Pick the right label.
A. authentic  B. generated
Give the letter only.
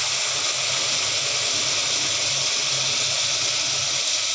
A